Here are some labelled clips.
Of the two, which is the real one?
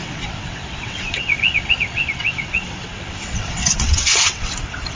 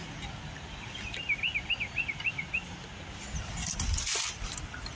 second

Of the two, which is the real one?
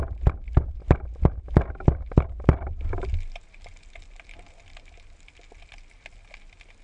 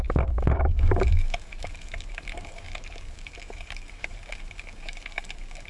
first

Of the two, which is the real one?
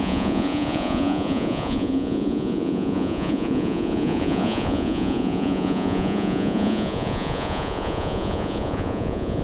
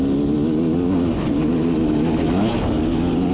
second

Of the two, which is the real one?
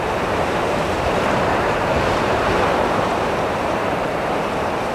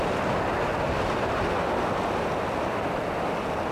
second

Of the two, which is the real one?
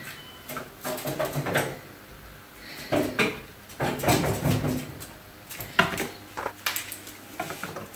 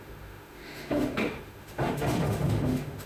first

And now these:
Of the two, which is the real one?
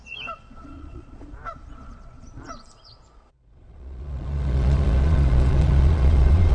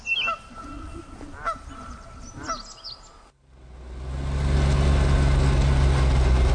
second